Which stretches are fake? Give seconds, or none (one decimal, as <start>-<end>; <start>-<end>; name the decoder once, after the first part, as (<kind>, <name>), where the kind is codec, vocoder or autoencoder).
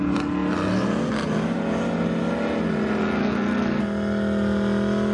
3.2-3.8 (codec, SNAC)